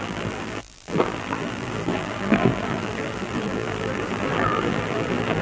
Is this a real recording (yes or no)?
no